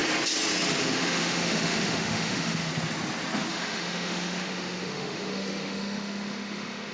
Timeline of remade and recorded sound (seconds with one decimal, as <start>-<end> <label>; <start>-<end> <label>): 0.0-0.8 recorded; 0.8-2.7 remade; 2.7-3.5 recorded; 3.5-6.9 remade